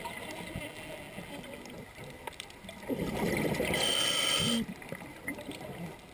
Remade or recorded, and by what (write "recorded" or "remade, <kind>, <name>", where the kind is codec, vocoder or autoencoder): recorded